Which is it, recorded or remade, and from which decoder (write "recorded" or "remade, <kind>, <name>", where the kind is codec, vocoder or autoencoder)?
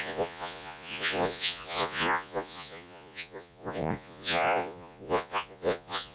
remade, vocoder, Vocos